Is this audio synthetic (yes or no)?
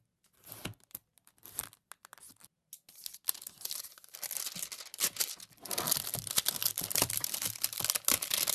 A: no